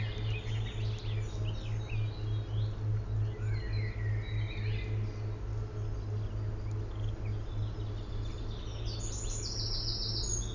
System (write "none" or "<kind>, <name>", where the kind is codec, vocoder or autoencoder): none